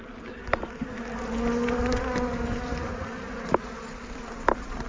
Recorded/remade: recorded